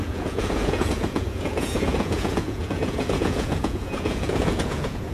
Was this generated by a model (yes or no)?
yes